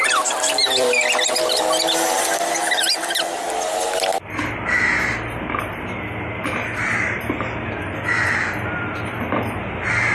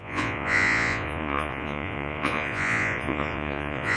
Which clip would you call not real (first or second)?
second